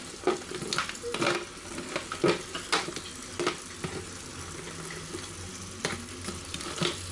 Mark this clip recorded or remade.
recorded